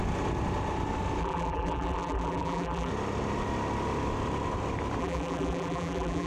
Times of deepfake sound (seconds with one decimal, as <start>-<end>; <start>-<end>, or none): 1.2-2.9; 5.0-6.3